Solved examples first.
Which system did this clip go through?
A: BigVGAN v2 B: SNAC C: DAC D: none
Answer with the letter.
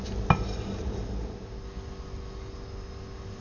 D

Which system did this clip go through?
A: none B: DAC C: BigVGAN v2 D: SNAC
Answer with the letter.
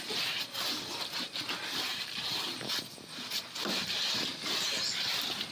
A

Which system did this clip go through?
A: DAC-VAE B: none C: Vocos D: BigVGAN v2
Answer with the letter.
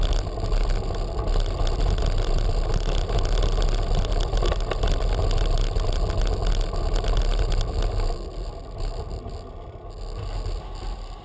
B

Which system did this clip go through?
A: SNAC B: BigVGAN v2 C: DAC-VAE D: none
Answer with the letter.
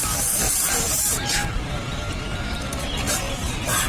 D